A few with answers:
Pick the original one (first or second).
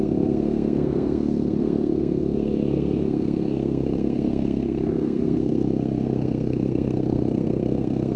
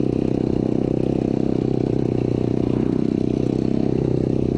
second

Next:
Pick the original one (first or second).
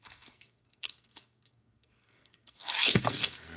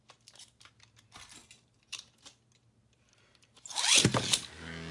second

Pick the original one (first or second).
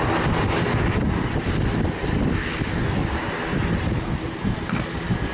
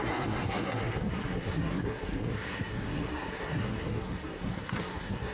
first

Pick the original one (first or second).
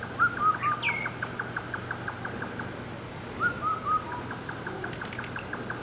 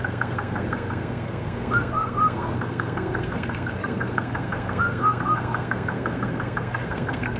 first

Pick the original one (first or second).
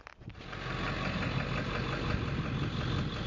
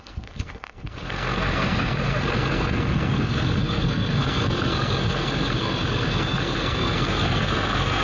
first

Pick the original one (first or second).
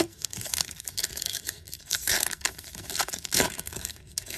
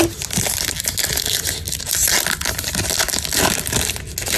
second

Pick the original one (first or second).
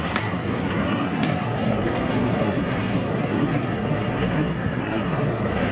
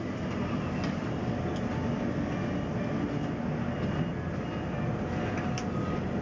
second